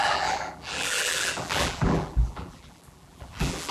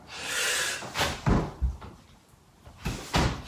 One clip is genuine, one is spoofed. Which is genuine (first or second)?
second